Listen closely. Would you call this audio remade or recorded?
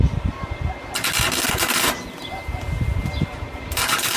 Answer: recorded